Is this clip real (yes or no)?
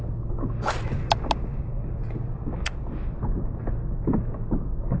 yes